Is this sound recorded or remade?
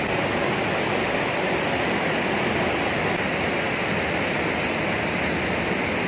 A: recorded